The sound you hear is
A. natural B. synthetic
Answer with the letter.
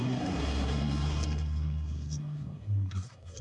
B